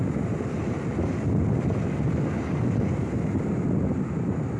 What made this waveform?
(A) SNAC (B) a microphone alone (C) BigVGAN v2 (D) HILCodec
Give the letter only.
B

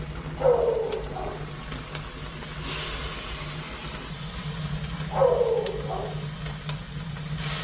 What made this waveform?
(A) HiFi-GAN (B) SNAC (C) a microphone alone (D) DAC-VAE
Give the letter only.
C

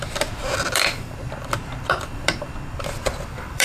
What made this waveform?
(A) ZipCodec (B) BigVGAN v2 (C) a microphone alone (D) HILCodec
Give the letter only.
B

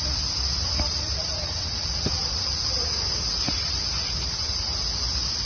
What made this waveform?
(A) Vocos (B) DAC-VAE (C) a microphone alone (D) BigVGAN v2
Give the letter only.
C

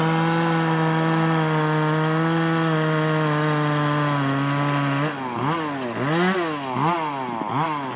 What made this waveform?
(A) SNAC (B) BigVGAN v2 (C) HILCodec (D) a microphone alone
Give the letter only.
D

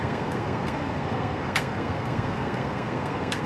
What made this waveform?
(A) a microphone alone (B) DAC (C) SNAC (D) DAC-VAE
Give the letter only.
C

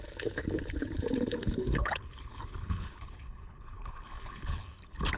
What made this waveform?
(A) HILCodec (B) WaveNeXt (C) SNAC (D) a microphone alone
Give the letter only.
A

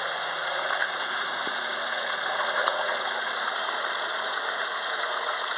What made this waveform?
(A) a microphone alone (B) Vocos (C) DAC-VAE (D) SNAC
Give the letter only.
B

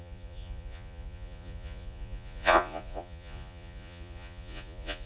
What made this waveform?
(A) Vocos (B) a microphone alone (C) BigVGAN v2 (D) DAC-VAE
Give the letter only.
A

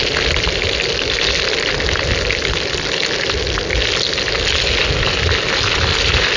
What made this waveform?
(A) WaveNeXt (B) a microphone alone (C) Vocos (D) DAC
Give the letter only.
B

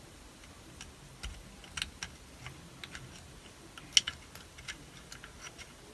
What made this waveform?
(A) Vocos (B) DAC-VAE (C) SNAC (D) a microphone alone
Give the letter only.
D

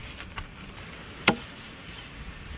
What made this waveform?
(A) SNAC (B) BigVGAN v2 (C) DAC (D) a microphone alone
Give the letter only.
B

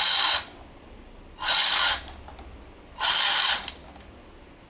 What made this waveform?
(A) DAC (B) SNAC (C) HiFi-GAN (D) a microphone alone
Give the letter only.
D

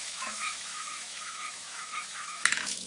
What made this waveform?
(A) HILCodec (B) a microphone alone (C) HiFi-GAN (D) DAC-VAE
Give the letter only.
D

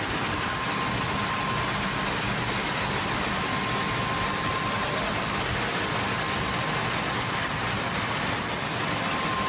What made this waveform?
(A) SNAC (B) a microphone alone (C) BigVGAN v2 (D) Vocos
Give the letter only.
B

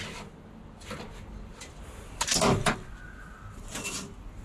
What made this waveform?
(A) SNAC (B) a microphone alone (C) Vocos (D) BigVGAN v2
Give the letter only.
B